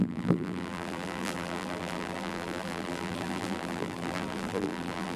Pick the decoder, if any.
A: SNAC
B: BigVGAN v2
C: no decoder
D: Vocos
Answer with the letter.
B